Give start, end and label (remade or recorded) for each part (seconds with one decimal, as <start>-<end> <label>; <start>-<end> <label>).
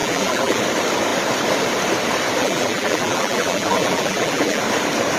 0.0-0.6 remade; 0.6-2.4 recorded; 2.4-4.6 remade; 4.6-5.2 recorded